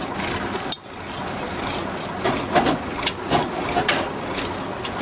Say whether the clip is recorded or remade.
recorded